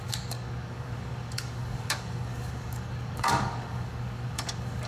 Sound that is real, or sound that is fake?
fake